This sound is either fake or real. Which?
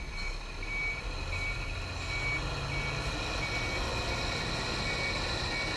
real